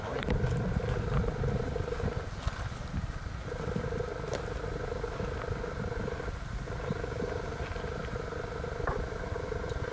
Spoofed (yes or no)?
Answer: no